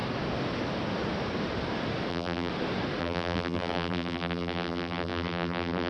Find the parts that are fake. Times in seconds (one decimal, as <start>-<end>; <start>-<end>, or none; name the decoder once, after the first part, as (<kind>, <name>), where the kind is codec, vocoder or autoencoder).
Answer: 2.1-2.5 (vocoder, BigVGAN v2); 3.0-5.9